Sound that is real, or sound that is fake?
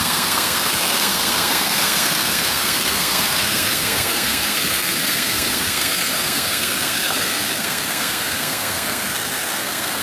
fake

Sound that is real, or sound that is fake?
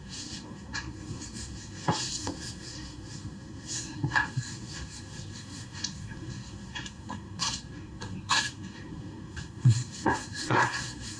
fake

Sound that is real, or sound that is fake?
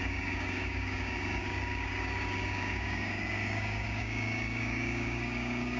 fake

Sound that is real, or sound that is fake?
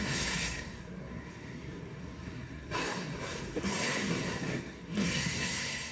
fake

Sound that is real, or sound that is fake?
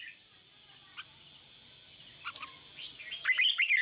real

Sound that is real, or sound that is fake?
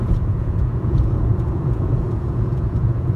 fake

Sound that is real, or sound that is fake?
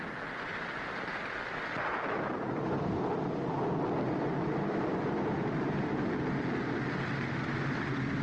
real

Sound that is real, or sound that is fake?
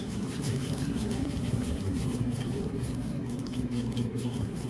fake